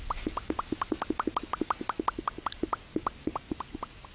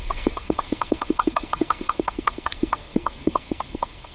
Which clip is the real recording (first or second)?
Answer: first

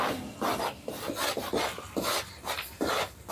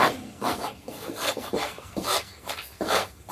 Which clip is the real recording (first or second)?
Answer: first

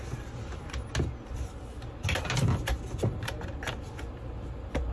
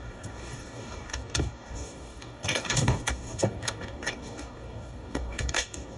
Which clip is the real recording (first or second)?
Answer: first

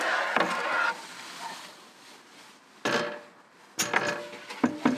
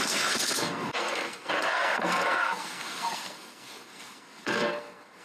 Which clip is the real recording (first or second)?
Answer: first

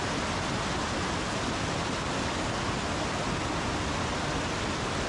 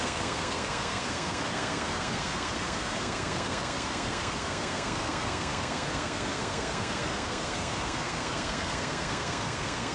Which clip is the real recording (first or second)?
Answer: first